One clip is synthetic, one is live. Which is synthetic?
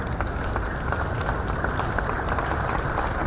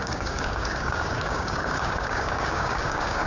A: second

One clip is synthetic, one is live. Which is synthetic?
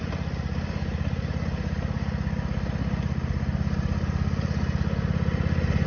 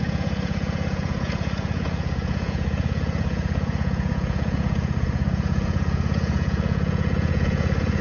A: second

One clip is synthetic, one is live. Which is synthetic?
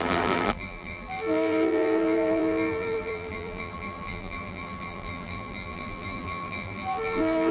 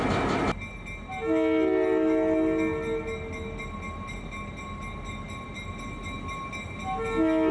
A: first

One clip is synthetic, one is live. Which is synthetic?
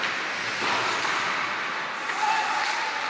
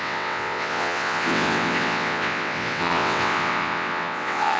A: second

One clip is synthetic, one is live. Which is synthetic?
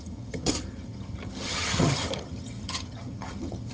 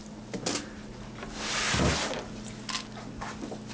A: first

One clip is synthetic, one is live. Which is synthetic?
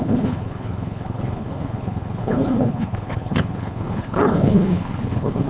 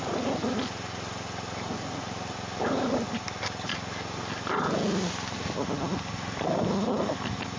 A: first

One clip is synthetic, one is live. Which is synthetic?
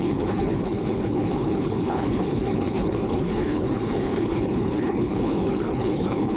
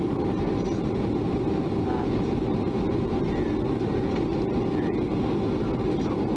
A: first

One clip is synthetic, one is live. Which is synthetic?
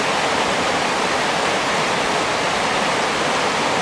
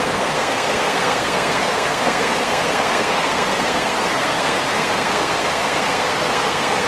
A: second